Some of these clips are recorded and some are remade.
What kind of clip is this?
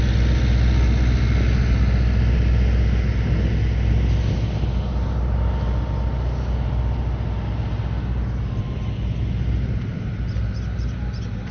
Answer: recorded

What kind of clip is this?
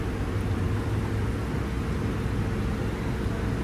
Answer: recorded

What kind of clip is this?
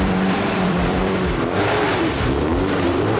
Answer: remade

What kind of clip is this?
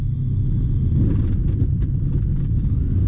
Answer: recorded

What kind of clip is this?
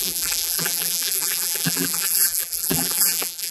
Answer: remade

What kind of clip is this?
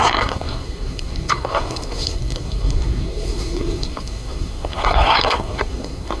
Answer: remade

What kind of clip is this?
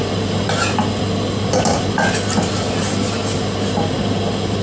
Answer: recorded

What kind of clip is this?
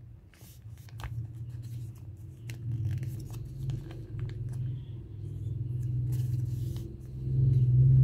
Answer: recorded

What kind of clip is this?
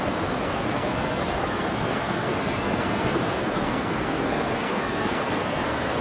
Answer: remade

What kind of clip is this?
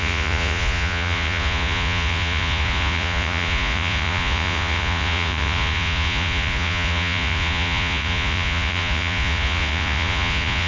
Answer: remade